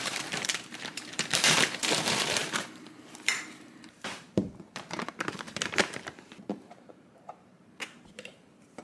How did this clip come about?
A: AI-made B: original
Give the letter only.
A